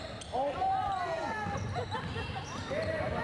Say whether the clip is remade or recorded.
recorded